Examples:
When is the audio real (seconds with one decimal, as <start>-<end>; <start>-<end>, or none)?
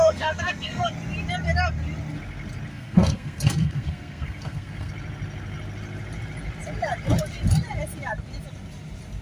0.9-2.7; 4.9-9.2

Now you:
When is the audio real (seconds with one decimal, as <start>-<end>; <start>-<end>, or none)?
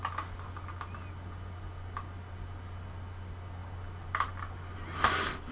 0.0-5.5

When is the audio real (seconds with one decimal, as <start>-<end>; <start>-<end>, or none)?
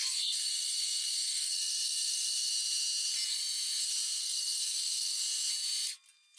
2.5-4.2; 5.2-6.4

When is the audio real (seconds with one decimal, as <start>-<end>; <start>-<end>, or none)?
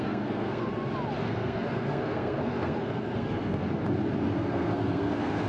0.7-1.2; 3.6-4.3